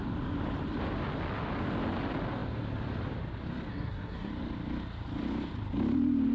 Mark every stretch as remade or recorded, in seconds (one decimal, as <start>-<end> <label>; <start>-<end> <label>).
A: 0.0-3.7 recorded; 3.7-4.3 remade; 4.3-6.3 recorded

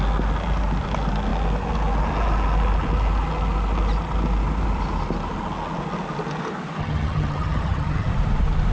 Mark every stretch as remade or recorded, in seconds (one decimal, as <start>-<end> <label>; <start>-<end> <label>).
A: 0.0-6.8 recorded; 6.8-8.1 remade; 8.1-8.7 recorded

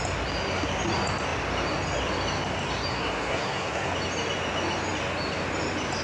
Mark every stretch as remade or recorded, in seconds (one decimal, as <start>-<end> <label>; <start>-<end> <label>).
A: 0.0-2.9 recorded; 2.9-3.9 remade; 3.9-6.0 recorded

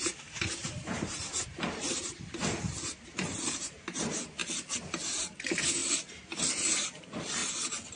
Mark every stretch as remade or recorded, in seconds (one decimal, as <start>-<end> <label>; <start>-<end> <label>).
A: 0.0-2.4 remade; 2.4-3.1 recorded; 3.1-4.4 remade; 4.4-5.2 recorded; 5.2-5.8 remade; 5.8-6.5 recorded; 6.5-7.4 remade; 7.4-8.0 recorded

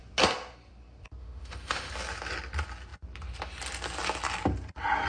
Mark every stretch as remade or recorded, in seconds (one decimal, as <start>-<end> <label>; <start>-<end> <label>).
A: 0.0-1.2 recorded; 1.2-1.9 remade; 1.9-5.1 recorded

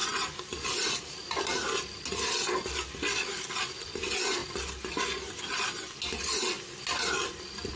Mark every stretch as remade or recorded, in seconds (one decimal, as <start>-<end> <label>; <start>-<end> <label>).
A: 0.0-7.8 recorded

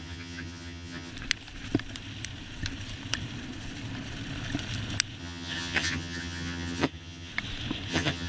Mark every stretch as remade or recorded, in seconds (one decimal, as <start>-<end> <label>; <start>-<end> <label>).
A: 0.0-1.1 remade; 1.1-5.2 recorded; 5.2-7.3 remade; 7.3-7.9 recorded; 7.9-8.3 remade